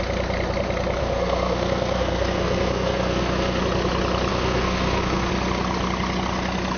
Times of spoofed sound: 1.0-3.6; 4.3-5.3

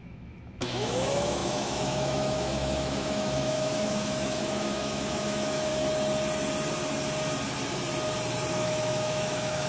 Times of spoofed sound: 0.0-5.7; 8.5-9.7

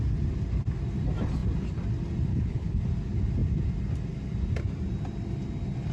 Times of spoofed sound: 2.3-2.8

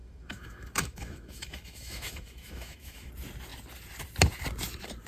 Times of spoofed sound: 0.0-3.1

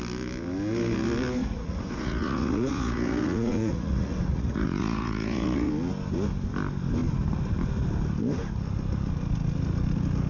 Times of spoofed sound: 1.4-5.7

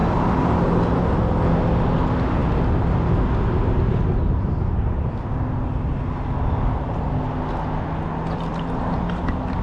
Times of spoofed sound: none

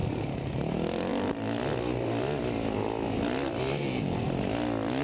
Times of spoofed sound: none

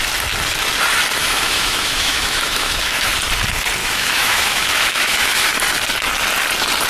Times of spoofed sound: 1.2-3.1; 3.8-5.5